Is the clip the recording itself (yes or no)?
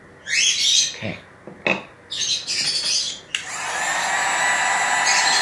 yes